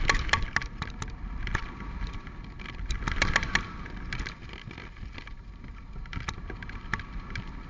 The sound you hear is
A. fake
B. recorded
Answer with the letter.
B